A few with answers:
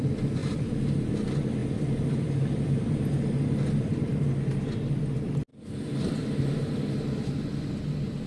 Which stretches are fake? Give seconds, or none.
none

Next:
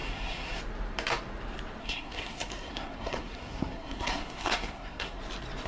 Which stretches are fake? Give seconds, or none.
0.0-0.6 (codec, SNAC); 1.8-5.2

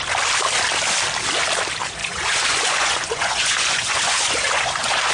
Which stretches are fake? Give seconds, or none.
2.0-5.1 (vocoder, Vocos)

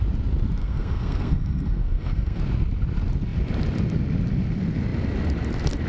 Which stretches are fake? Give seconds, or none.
0.6-2.4 (codec, SNAC)

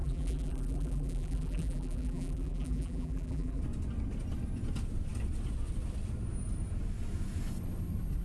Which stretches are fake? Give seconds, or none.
0.0-3.6 (vocoder, BigVGAN v2)

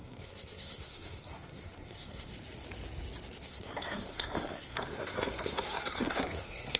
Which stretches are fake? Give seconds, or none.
0.0-2.3 (codec, SNAC); 3.4-6.8

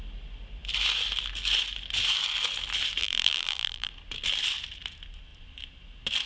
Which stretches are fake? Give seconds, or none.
3.0-3.9 (vocoder, BigVGAN v2)